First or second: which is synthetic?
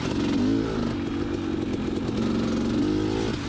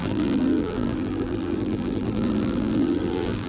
second